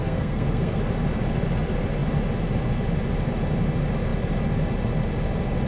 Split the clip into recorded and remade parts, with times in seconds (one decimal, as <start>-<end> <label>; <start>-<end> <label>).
0.0-0.8 remade; 0.8-5.7 recorded